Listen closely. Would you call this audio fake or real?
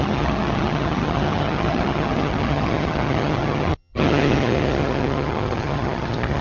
fake